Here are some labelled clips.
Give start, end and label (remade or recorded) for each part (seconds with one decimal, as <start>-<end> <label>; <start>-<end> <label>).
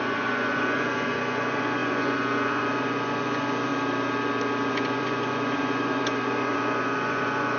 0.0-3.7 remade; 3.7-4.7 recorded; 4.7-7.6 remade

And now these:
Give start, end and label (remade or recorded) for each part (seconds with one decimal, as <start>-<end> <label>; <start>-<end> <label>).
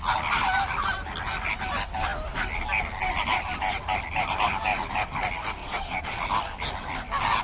0.0-5.6 recorded; 5.6-6.2 remade; 6.2-7.4 recorded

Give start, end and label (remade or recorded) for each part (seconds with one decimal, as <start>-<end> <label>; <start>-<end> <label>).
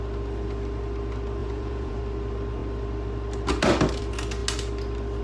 0.0-1.4 recorded; 1.4-2.0 remade; 2.0-5.2 recorded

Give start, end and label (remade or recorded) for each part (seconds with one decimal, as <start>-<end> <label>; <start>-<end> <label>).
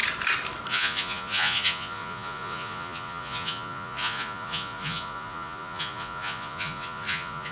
0.0-0.7 recorded; 0.7-7.5 remade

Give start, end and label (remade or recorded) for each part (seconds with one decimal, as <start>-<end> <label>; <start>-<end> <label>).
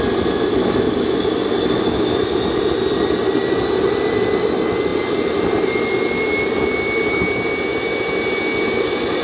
0.0-9.2 recorded